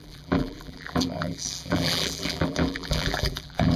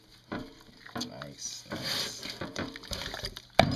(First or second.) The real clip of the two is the second